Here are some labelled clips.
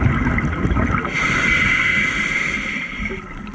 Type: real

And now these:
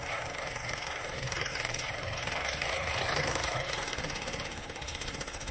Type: fake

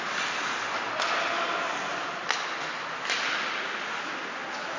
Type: real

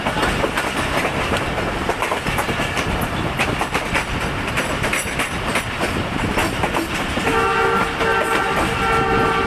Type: real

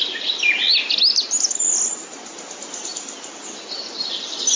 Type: real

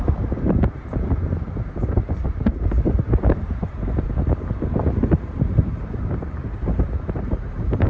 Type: fake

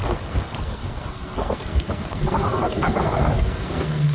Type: fake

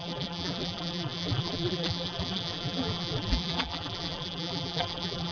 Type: fake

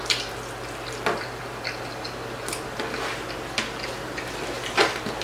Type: real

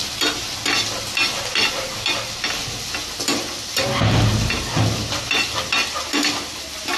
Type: real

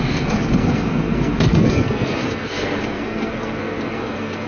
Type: fake